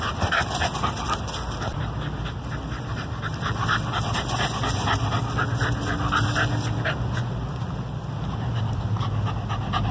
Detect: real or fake real